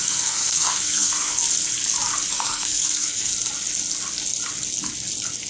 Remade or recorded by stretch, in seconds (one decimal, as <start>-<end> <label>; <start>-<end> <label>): 0.0-1.4 remade; 1.4-2.3 recorded; 2.3-3.3 remade; 3.3-5.5 recorded